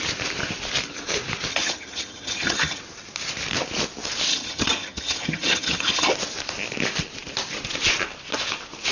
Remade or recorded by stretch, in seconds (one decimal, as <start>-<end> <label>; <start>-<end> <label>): 0.0-1.5 recorded; 1.5-2.8 remade; 2.8-4.3 recorded; 4.3-6.1 remade; 6.1-8.9 recorded